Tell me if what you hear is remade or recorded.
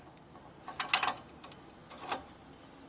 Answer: recorded